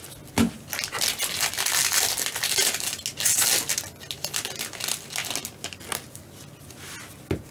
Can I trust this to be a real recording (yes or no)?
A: yes